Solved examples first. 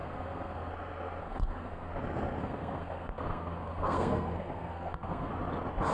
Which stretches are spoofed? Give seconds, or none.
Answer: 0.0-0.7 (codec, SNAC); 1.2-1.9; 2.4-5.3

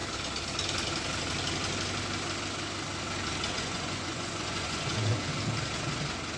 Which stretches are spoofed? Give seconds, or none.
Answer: 3.5-5.3 (vocoder, Vocos)

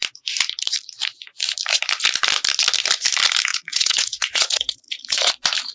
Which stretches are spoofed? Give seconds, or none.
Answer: 3.5-5.3 (vocoder, Vocos)

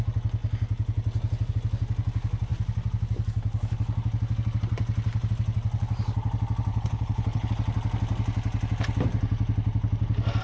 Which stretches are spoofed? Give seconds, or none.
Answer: 6.7-7.5 (codec, HILCodec)

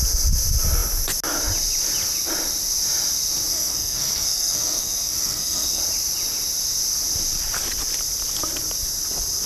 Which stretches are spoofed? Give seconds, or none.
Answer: 3.5-5.8 (codec, SNAC)

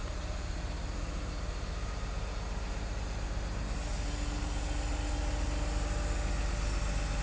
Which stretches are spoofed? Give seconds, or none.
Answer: none

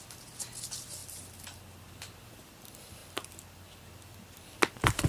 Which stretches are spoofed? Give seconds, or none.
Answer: 1.0-1.9 (vocoder, BigVGAN v2); 3.0-3.8

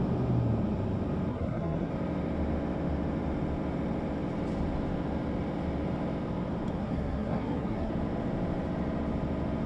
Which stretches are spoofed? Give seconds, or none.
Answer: 1.3-1.9 (codec, SNAC); 6.8-7.9